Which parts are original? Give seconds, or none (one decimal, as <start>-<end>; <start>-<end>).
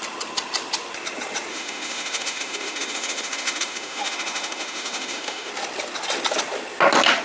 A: 0.0-1.5; 5.5-7.2